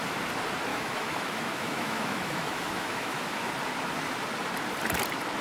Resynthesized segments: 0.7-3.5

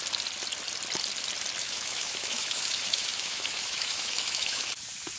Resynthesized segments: 1.6-4.7